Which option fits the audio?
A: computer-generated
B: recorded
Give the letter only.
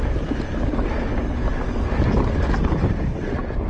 B